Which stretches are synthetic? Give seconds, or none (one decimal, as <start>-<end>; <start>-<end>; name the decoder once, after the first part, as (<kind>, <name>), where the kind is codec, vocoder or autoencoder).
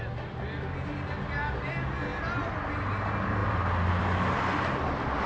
none